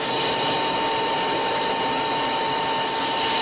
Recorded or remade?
recorded